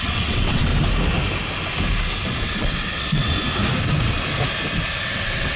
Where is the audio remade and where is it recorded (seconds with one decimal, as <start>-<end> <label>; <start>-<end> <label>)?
0.0-0.7 remade; 0.7-2.4 recorded; 2.4-3.3 remade; 3.3-5.0 recorded; 5.0-5.6 remade